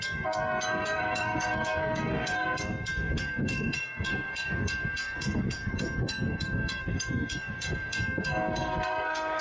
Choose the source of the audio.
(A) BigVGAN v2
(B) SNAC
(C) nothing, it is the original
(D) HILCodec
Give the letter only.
B